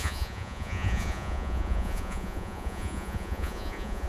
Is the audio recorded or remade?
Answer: remade